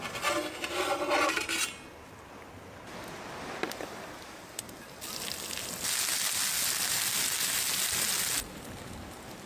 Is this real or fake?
real